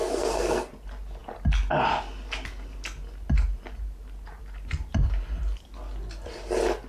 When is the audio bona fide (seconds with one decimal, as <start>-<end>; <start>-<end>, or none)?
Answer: 0.7-6.9

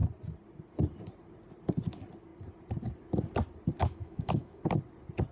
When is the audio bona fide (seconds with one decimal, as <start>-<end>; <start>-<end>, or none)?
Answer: 0.0-3.8; 4.6-5.3

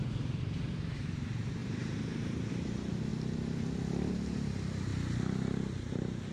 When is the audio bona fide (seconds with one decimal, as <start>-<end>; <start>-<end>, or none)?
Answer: 3.1-4.1; 4.9-5.8

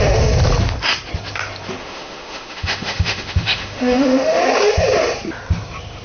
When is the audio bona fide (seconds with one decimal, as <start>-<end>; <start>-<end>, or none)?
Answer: 0.0-1.8; 4.4-6.0

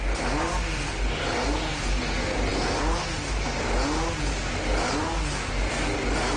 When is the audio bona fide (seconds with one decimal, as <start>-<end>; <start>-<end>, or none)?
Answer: 0.0-6.4